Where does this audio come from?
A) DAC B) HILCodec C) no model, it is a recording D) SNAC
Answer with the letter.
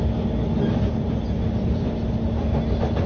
C